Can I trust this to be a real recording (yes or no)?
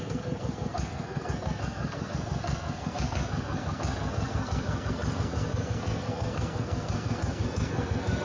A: no